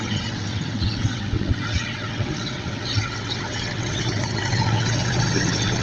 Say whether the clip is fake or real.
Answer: fake